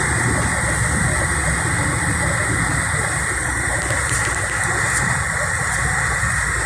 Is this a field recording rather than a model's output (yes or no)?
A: yes